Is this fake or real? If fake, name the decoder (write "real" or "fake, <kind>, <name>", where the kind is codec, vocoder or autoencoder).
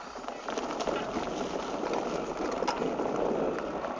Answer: real